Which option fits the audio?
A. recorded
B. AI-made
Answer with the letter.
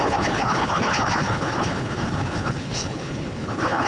B